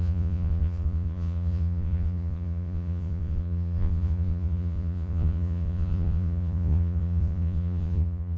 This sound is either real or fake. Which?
fake